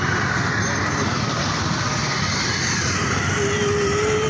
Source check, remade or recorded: recorded